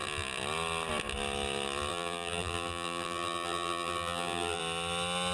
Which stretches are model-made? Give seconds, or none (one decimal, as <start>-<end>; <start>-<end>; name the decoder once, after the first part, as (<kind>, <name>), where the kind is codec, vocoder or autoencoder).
1.9-4.6 (vocoder, BigVGAN v2)